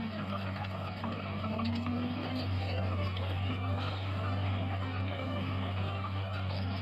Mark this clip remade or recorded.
remade